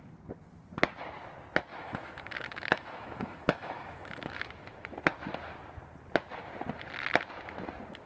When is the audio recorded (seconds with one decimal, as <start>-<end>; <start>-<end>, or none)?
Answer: 0.0-1.7; 4.5-8.1